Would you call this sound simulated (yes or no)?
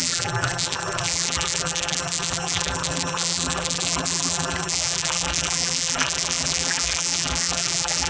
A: yes